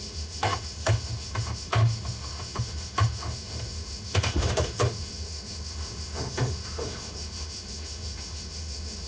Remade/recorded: remade